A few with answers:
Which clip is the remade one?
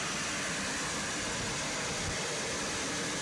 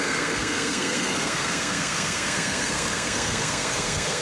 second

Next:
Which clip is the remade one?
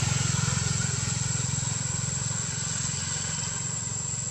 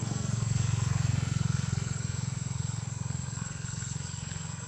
second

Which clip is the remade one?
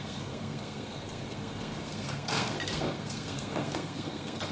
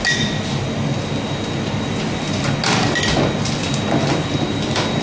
first